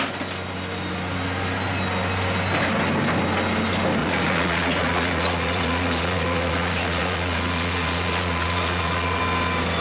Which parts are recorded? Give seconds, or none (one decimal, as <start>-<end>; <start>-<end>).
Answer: 0.0-4.0; 9.2-9.8